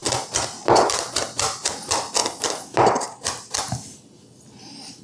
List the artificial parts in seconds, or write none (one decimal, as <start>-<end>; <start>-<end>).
none